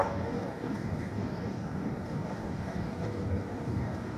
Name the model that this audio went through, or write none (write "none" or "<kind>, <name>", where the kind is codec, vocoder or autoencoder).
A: codec, DAC